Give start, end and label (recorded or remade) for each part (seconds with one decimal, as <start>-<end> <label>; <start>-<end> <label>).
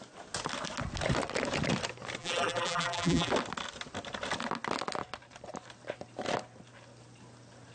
0.0-2.2 recorded; 2.2-3.3 remade; 3.3-7.7 recorded